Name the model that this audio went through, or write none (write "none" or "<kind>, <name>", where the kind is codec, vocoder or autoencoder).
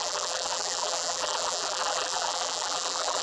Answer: vocoder, BigVGAN v2